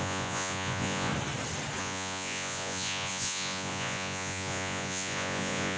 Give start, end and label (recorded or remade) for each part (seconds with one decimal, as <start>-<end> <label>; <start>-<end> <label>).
0.0-1.1 remade; 1.1-1.8 recorded; 1.8-5.8 remade

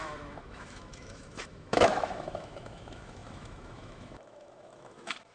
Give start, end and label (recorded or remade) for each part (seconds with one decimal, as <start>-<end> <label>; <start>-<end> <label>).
0.0-5.3 remade

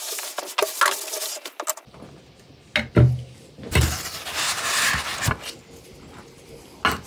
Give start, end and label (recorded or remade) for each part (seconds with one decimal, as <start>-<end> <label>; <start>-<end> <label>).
0.0-7.1 recorded

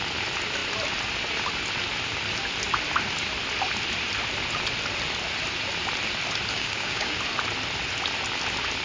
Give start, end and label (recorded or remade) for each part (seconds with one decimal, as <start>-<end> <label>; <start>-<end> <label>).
0.0-6.5 recorded; 6.5-7.2 remade; 7.2-8.8 recorded

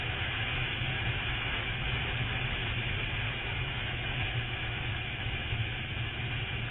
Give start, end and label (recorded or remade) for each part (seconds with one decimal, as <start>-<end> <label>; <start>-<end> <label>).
0.0-2.6 remade; 2.6-3.3 recorded; 3.3-6.7 remade

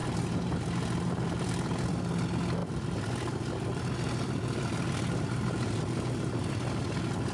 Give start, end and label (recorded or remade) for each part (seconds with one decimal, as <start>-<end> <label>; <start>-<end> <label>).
0.0-2.0 remade; 2.0-2.6 recorded; 2.6-6.5 remade; 6.5-7.3 recorded

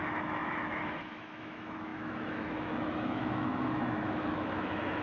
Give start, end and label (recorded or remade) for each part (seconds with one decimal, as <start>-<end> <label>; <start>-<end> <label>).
0.0-5.0 remade